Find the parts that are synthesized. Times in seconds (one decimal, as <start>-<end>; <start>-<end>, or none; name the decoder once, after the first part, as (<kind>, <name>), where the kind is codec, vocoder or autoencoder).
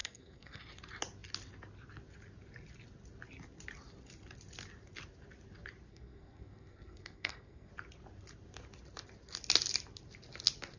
0.0-0.6 (codec, SNAC); 5.9-7.7